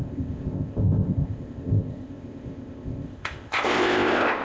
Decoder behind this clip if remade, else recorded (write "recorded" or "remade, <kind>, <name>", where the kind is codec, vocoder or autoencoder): remade, codec, ZipCodec